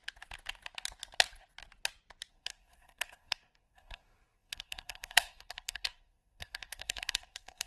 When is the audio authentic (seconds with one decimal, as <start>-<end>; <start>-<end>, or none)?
0.0-2.3